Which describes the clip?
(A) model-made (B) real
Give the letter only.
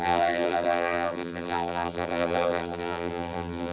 A